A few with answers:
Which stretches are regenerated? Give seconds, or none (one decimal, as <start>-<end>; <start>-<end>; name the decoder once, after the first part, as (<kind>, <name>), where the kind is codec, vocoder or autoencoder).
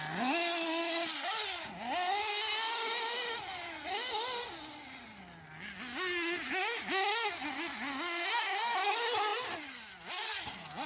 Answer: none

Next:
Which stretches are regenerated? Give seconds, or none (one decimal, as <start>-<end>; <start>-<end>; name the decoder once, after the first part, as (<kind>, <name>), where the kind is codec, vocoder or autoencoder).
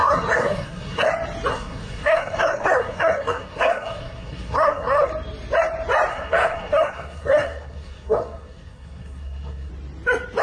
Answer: 0.0-1.1 (codec, SNAC); 1.5-5.1; 6.1-9.7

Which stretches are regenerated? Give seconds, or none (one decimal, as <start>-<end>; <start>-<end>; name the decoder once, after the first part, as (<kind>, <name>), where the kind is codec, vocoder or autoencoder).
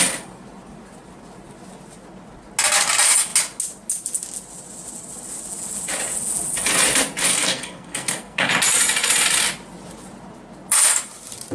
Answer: 7.3-8.5 (codec, SNAC)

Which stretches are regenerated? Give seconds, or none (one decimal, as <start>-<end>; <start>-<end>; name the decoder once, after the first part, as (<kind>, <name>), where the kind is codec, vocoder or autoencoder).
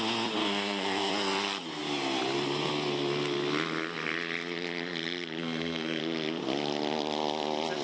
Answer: 0.4-1.1 (codec, SNAC); 5.4-6.0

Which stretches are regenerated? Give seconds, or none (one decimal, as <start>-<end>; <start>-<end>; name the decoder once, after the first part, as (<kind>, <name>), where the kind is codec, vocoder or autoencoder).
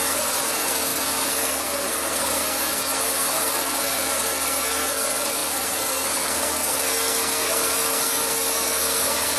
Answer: 0.0-9.4 (codec, SNAC)